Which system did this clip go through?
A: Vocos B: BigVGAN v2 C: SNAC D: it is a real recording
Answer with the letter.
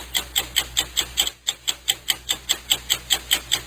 D